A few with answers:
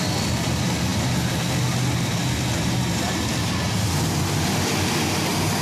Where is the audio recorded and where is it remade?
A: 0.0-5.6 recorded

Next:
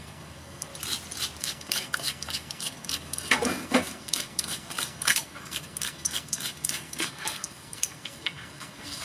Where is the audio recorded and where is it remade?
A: 0.0-0.7 remade; 0.7-1.4 recorded; 1.4-9.0 remade

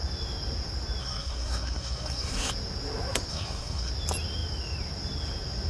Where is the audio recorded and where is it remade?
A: 0.0-1.0 recorded; 1.0-2.5 remade; 2.5-3.3 recorded; 3.3-3.9 remade; 3.9-5.7 recorded

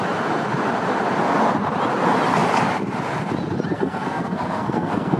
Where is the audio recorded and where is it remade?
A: 0.0-3.7 recorded; 3.7-5.2 remade

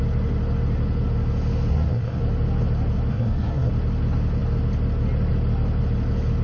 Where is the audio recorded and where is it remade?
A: 0.0-1.7 recorded; 1.7-2.2 remade; 2.2-3.1 recorded; 3.1-3.7 remade; 3.7-6.4 recorded